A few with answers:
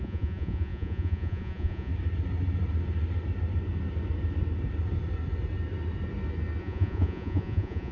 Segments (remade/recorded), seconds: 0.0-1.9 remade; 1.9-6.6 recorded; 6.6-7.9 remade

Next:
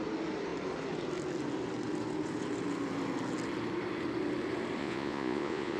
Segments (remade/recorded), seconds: 0.0-4.8 recorded; 4.8-5.8 remade

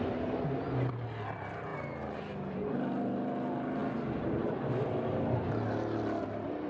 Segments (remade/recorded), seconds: 0.0-6.7 recorded